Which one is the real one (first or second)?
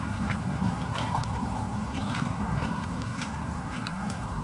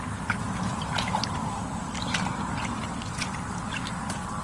second